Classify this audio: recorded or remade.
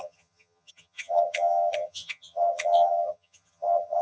remade